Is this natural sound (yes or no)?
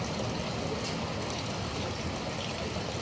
yes